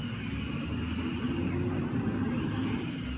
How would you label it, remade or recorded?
recorded